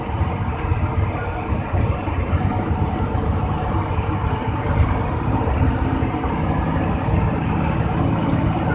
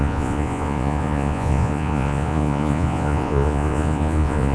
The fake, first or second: second